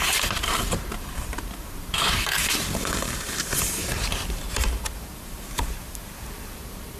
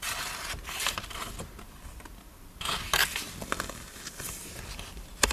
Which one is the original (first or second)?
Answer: second